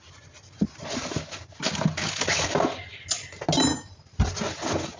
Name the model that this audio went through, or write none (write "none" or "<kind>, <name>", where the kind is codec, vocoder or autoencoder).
none